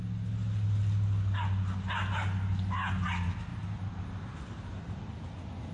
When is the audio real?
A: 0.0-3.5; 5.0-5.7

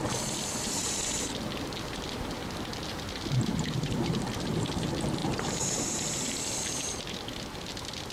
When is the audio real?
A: 0.0-5.2; 5.8-8.1

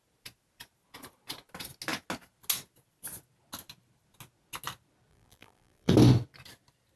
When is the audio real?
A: 0.0-5.1; 5.9-7.0

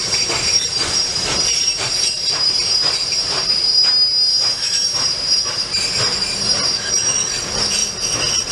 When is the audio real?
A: 3.9-4.3; 6.9-8.5